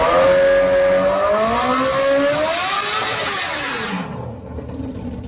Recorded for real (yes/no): yes